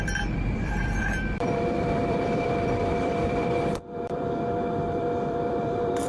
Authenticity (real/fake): fake